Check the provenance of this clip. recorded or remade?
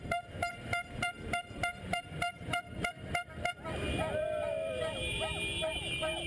remade